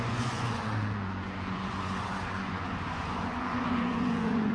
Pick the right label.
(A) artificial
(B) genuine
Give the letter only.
A